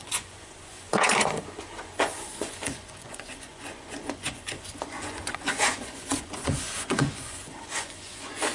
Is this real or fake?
fake